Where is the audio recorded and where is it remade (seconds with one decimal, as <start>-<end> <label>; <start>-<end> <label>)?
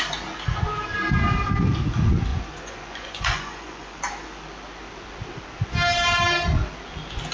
0.0-2.3 recorded; 2.3-4.0 remade; 4.0-7.3 recorded